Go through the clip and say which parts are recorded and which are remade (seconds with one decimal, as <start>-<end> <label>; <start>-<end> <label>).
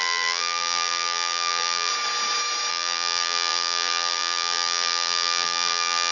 0.0-1.9 remade; 1.9-2.7 recorded; 2.7-6.1 remade